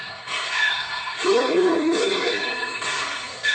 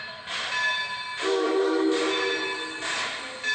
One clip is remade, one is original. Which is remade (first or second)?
first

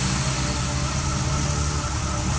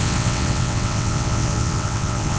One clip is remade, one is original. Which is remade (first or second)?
second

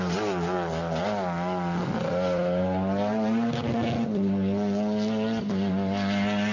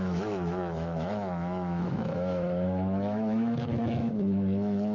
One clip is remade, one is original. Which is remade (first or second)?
second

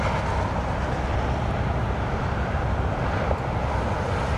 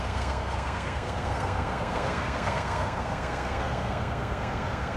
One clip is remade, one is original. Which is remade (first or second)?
second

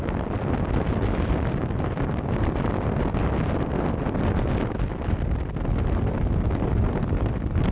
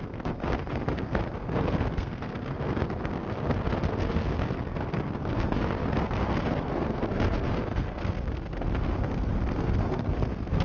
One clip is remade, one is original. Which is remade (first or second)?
second